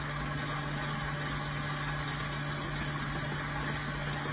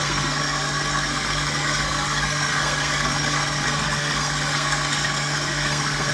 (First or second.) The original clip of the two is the first